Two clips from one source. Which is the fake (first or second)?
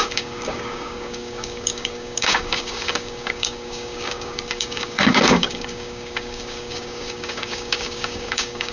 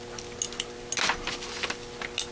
first